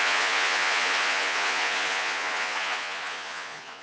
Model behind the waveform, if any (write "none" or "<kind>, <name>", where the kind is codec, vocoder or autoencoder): vocoder, Vocos